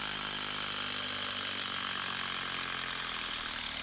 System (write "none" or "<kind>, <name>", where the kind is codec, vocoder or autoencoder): none